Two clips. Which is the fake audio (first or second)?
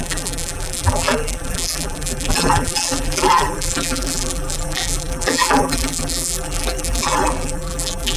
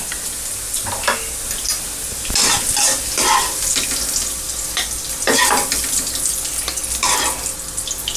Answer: first